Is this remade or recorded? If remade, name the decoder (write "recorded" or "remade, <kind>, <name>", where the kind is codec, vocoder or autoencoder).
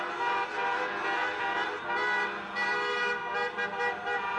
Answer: recorded